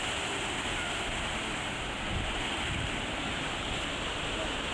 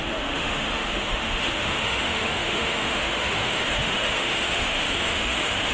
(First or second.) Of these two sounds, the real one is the first